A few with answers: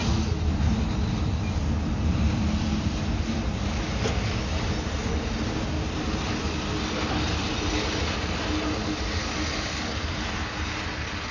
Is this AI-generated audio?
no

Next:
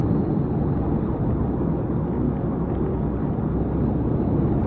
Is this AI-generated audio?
no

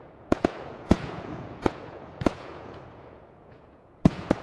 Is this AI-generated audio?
yes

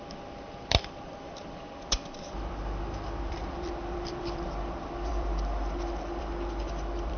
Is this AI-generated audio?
yes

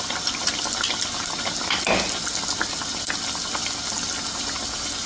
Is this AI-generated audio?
no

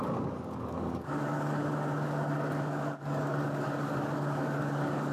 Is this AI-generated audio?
yes